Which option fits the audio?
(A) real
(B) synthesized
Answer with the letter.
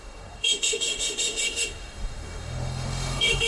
B